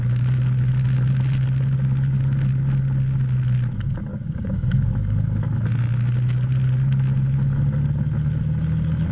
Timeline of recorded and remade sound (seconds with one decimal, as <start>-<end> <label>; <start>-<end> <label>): 0.0-4.1 recorded; 4.1-4.9 remade; 4.9-9.1 recorded